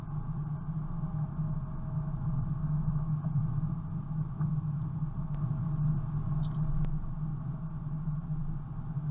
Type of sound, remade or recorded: recorded